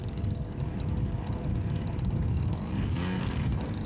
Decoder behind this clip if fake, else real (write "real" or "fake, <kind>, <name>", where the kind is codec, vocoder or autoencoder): fake, codec, DAC